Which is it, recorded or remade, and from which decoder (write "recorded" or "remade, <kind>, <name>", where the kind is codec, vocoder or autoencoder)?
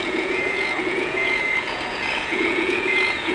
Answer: remade, vocoder, Vocos